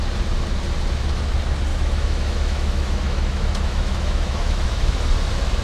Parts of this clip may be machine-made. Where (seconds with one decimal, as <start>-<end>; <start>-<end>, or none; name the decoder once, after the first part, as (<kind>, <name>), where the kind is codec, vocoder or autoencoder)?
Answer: 1.7-5.1 (autoencoder, DAC-VAE)